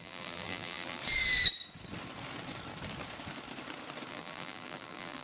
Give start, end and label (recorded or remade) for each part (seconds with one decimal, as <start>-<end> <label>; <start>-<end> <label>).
0.0-1.0 remade; 1.0-4.1 recorded; 4.1-5.2 remade